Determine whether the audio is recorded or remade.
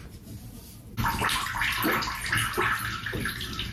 recorded